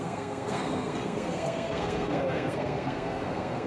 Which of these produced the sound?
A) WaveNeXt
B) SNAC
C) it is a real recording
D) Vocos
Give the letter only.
B